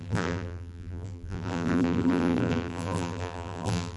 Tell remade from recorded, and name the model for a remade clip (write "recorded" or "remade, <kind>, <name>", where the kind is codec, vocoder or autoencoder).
remade, vocoder, BigVGAN v2